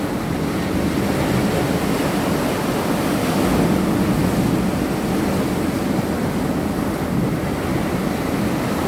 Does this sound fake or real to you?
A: real